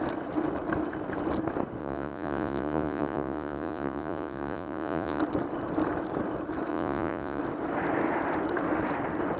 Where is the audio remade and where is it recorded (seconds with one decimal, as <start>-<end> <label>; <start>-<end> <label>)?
0.0-1.8 recorded; 1.8-5.2 remade; 5.2-6.7 recorded; 6.7-7.4 remade; 7.4-9.4 recorded